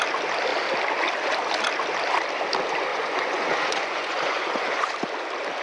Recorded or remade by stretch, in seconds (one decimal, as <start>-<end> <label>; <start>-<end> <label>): 0.0-2.9 recorded; 2.9-4.9 remade; 4.9-5.6 recorded